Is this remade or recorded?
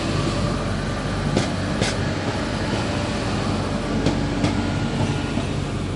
recorded